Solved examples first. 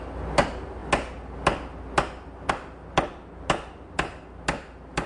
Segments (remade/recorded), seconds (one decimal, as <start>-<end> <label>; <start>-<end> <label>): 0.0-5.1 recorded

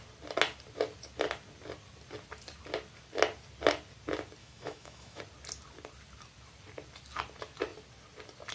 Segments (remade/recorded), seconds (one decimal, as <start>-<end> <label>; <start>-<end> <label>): 0.0-4.4 recorded; 4.4-5.2 remade; 5.2-8.5 recorded

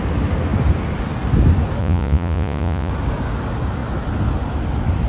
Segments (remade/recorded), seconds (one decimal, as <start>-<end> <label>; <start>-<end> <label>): 0.0-1.8 recorded; 1.8-2.9 remade; 2.9-5.1 recorded

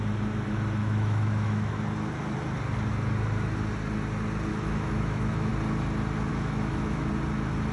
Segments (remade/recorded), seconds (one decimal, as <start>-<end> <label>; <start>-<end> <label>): 0.0-0.8 recorded; 0.8-1.8 remade; 1.8-4.5 recorded; 4.5-5.5 remade; 5.5-6.3 recorded; 6.3-7.1 remade; 7.1-7.7 recorded

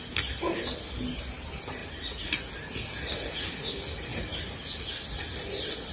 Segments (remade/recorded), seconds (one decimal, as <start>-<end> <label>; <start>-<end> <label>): 0.0-5.9 recorded

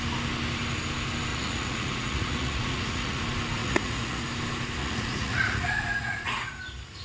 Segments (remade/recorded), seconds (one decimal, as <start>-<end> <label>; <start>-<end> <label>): 0.0-1.3 recorded; 1.3-3.2 remade; 3.2-3.6 recorded; 3.6-4.2 remade; 4.2-4.8 recorded; 4.8-6.6 remade; 6.6-7.0 recorded

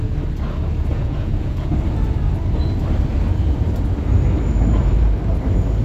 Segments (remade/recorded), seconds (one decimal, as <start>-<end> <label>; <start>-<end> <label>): 0.0-0.9 recorded; 0.9-1.7 remade; 1.7-5.8 recorded